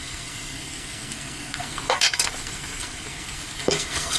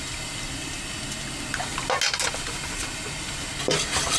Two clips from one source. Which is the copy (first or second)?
first